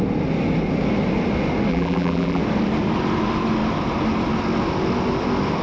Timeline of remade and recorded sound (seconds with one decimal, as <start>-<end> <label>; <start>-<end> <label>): 0.0-1.7 recorded; 1.7-2.4 remade; 2.4-5.6 recorded